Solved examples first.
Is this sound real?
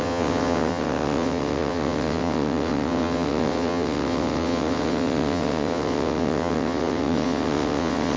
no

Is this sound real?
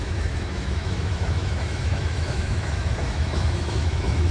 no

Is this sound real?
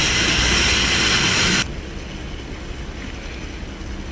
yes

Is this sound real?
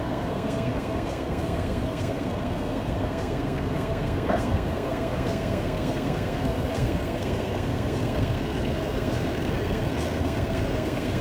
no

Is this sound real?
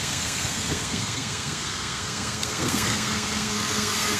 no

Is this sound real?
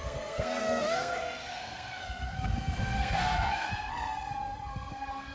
no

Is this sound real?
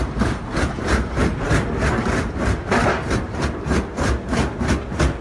yes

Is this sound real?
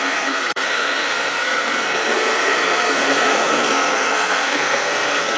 no